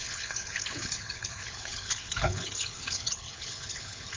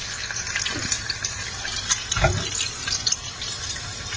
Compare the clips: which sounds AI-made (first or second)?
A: first